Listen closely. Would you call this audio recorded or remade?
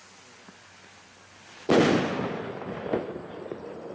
recorded